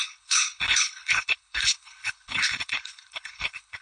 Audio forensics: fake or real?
fake